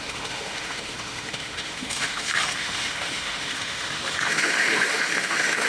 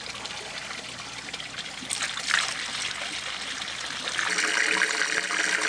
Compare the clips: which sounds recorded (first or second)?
second